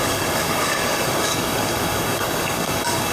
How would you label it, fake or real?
fake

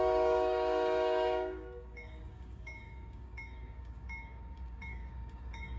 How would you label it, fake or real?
fake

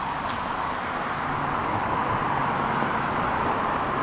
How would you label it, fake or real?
real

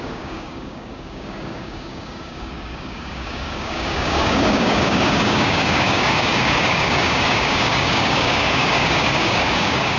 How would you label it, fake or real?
fake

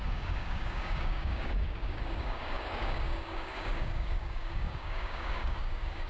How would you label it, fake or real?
fake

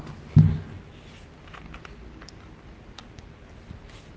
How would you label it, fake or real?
real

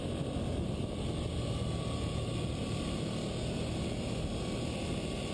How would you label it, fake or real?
real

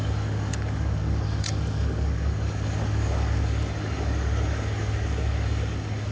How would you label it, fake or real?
fake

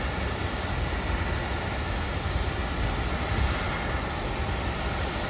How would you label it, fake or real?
real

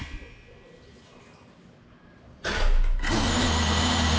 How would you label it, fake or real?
real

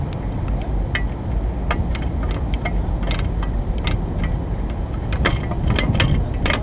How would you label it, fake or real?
real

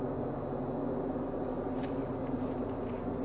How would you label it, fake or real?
real